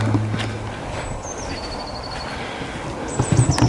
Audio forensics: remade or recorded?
recorded